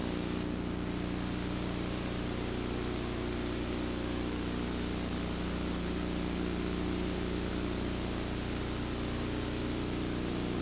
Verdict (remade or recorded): recorded